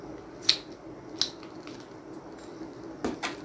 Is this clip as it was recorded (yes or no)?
yes